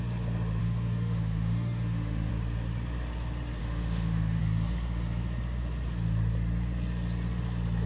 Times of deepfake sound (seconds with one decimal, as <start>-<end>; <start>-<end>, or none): 0.6-2.3; 3.6-4.4